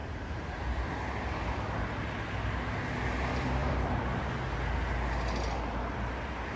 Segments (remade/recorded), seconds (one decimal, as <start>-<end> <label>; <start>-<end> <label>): 0.0-0.6 remade; 0.6-3.6 recorded; 3.6-4.2 remade; 4.2-6.6 recorded